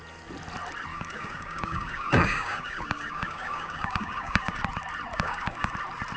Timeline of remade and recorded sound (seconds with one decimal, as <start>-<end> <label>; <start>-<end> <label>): 0.0-0.9 recorded; 0.9-4.6 remade; 4.6-5.1 recorded; 5.1-5.7 remade; 5.7-6.2 recorded